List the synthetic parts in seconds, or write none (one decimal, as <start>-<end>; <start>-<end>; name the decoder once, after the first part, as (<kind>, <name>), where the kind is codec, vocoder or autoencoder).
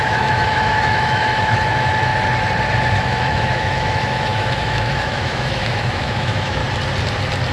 0.0-2.1 (autoencoder, DAC-VAE); 2.8-6.6